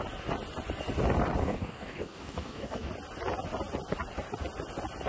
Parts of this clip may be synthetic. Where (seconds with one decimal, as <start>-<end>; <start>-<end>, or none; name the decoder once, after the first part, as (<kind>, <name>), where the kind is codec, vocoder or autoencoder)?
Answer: 1.4-2.9 (codec, DAC)